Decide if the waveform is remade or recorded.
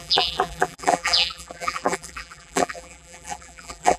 remade